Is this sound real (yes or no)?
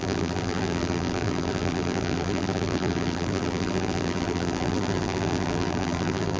no